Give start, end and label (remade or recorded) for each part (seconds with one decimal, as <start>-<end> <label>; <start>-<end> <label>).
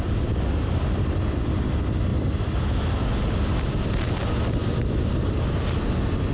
0.0-6.3 recorded